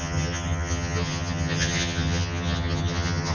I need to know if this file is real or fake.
fake